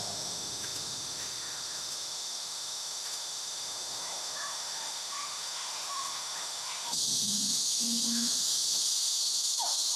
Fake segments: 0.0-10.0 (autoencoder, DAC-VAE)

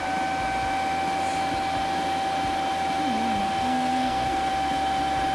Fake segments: 3.4-4.5 (codec, SNAC)